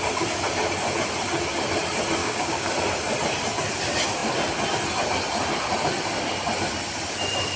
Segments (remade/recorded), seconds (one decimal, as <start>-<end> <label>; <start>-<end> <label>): 0.0-2.2 recorded; 2.2-2.7 remade; 2.7-7.6 recorded